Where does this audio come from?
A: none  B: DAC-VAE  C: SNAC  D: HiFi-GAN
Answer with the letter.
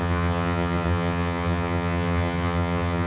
D